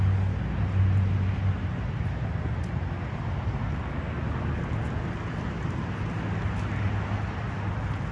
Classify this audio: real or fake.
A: real